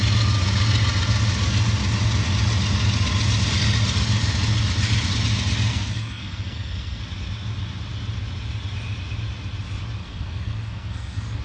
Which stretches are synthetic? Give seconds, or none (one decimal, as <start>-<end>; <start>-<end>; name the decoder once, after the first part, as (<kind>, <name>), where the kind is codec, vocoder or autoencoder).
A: 5.7-7.0 (codec, SNAC); 10.0-11.4